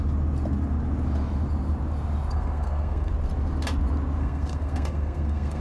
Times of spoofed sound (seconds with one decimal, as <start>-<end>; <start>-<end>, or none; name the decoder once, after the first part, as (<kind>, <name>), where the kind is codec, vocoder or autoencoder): 2.3-3.1 (codec, SNAC); 4.2-5.6